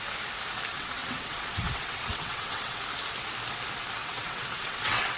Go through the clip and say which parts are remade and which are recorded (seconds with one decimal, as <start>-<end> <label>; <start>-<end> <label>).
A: 0.0-0.7 recorded; 0.7-2.8 remade; 2.8-4.0 recorded; 4.0-5.2 remade